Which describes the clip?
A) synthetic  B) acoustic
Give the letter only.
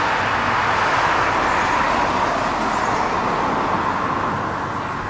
B